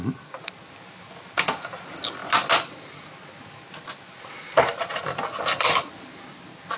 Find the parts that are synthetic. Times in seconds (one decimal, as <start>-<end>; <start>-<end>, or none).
none